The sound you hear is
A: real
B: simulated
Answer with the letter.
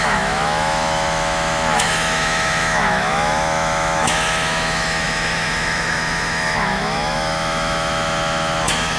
B